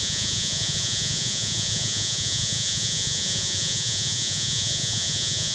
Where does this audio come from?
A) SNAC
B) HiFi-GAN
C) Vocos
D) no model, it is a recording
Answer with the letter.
C